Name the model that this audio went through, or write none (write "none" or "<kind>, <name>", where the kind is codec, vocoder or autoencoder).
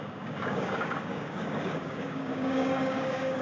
codec, DAC